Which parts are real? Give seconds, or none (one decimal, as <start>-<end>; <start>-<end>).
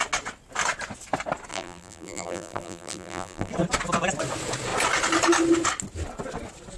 0.0-1.5; 3.5-6.8